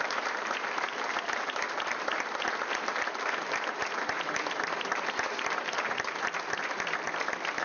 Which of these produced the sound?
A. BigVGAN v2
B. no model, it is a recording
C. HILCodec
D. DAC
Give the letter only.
A